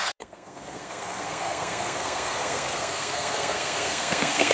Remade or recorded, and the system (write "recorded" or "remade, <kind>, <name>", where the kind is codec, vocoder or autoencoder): remade, codec, SNAC